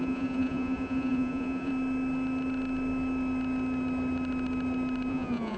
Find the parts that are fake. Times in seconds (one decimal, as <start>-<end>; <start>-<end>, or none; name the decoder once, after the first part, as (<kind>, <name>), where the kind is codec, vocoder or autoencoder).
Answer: 0.0-1.7 (vocoder, Vocos); 5.1-5.6